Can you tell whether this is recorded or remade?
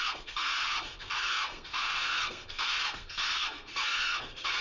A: remade